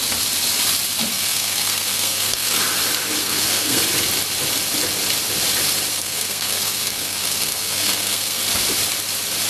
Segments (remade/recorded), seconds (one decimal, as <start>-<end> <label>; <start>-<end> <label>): 0.0-1.1 recorded; 1.1-2.6 remade; 2.6-3.2 recorded; 3.2-3.8 remade; 3.8-5.9 recorded; 5.9-8.4 remade; 8.4-9.5 recorded